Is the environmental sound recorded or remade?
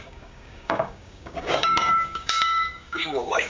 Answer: remade